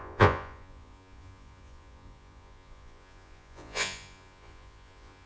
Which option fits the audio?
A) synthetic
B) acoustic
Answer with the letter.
A